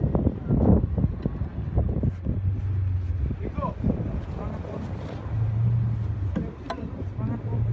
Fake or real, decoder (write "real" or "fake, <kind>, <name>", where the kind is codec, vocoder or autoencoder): real